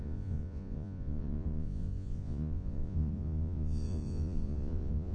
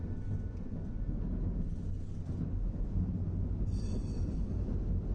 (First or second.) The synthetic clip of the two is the first